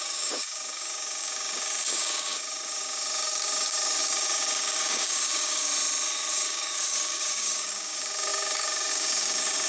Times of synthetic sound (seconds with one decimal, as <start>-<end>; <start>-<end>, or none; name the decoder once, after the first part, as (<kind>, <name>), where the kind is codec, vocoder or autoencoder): 0.0-5.7 (codec, DAC); 6.3-9.7